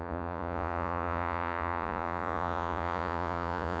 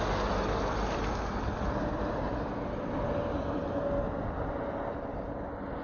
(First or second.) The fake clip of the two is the first